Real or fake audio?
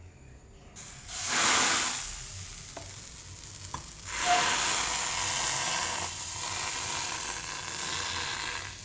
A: real